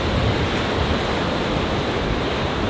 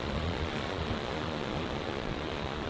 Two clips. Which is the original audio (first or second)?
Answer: first